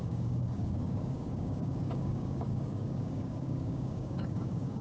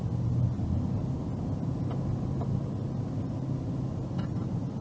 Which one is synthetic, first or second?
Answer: first